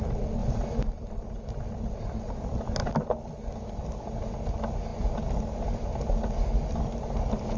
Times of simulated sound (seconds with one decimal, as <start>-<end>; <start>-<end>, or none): none